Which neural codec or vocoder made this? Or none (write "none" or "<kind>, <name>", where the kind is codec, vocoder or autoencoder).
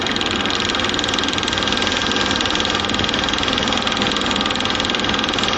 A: none